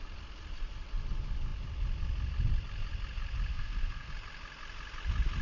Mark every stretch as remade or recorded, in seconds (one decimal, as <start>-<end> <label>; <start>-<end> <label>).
0.0-3.5 recorded; 3.5-4.1 remade; 4.1-5.4 recorded